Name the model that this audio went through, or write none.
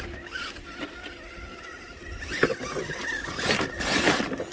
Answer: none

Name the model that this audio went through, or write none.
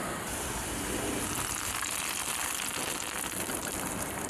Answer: vocoder, BigVGAN v2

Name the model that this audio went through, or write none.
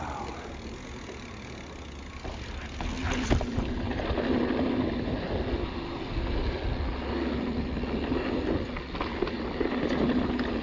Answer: none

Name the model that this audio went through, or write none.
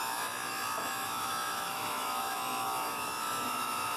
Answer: autoencoder, DAC-VAE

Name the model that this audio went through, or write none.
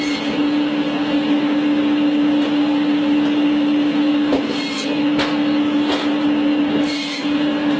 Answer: none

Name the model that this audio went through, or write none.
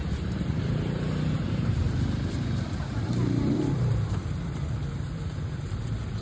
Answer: vocoder, BigVGAN v2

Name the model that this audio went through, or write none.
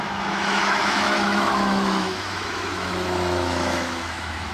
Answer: autoencoder, DAC-VAE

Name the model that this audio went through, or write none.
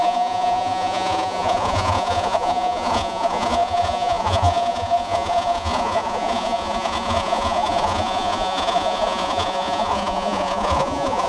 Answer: vocoder, Vocos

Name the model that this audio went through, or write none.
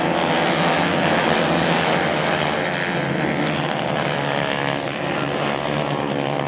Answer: none